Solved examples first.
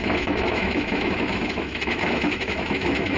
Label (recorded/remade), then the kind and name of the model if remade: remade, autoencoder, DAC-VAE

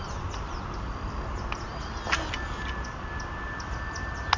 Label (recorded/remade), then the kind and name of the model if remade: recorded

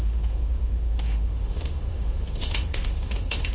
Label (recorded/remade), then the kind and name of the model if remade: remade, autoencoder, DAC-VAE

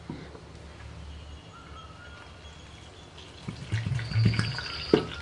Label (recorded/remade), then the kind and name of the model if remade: recorded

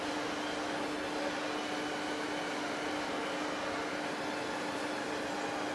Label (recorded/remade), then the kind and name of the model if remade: recorded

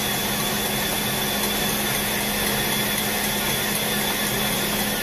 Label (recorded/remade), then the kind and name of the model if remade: recorded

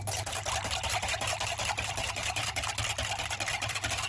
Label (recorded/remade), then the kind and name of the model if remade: recorded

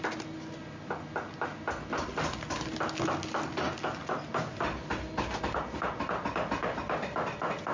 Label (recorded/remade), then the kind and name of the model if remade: recorded